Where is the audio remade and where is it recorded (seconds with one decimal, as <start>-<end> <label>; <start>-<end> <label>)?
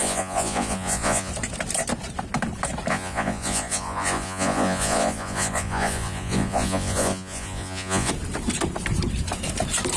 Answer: 0.0-1.3 remade; 1.3-2.9 recorded; 2.9-8.1 remade; 8.1-10.0 recorded